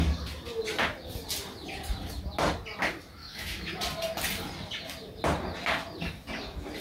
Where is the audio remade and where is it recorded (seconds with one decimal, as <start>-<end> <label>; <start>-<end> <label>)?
0.0-3.2 recorded; 3.2-3.8 remade; 3.8-6.8 recorded